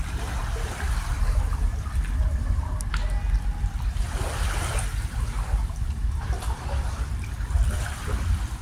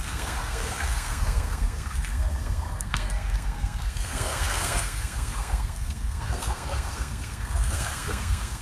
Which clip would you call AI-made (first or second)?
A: second